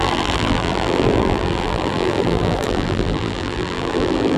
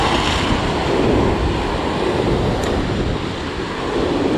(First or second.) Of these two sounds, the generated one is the first